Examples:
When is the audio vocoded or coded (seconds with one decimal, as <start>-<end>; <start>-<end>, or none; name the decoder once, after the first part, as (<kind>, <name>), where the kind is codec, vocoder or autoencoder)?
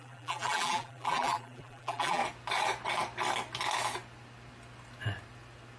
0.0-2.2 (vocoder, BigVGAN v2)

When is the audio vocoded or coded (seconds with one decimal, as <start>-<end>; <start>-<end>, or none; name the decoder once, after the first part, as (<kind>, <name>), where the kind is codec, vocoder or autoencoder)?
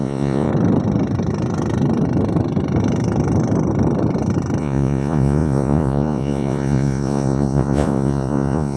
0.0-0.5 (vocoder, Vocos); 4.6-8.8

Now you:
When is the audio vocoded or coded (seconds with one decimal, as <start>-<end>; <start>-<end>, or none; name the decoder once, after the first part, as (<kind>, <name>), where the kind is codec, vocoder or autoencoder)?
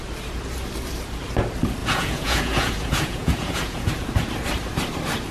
1.8-3.9 (vocoder, Vocos)